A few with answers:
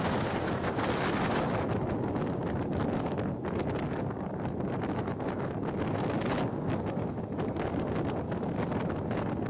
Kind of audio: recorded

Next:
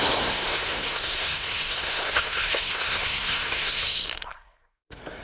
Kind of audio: remade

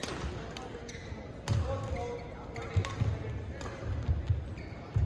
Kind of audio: recorded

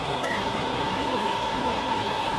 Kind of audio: remade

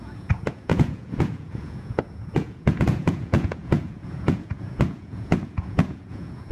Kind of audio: remade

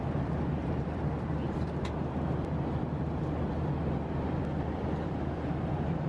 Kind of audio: remade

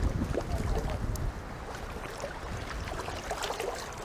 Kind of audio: recorded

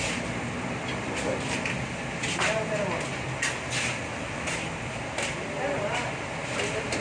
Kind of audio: recorded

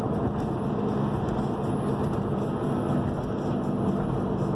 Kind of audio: recorded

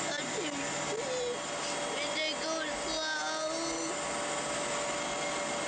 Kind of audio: recorded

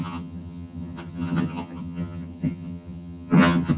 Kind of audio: remade